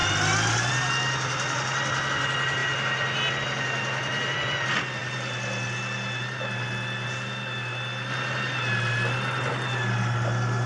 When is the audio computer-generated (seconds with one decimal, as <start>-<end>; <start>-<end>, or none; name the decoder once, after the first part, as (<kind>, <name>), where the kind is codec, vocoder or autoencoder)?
none

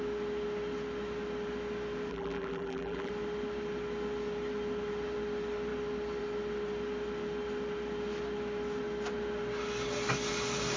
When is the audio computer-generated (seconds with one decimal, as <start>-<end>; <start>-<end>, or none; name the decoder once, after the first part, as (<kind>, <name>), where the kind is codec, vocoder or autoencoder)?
2.1-3.1 (vocoder, BigVGAN v2)

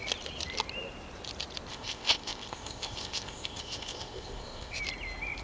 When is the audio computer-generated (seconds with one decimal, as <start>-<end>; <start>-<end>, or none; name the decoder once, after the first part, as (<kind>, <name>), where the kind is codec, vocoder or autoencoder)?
1.7-4.8 (codec, ZipCodec)

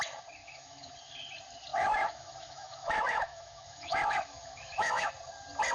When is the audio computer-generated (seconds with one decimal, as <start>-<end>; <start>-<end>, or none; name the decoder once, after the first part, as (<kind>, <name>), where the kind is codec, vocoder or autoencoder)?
0.4-0.9 (autoencoder, DAC-VAE); 1.7-5.1

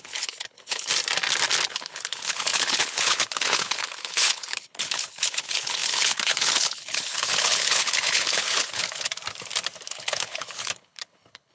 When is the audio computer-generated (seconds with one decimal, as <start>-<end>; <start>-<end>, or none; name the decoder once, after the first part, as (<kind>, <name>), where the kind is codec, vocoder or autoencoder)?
0.0-0.9 (codec, HILCodec); 1.7-9.1; 9.9-11.5

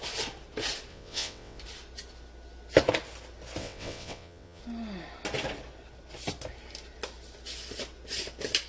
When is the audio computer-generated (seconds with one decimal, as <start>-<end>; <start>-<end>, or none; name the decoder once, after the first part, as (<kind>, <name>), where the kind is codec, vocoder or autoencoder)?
0.9-1.6 (vocoder, WaveNeXt); 3.6-4.6

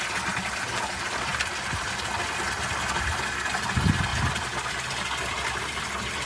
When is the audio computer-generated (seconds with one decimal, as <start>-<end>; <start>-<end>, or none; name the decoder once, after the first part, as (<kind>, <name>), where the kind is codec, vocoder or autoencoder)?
none